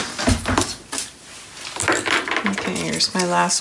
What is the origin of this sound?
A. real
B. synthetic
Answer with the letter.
A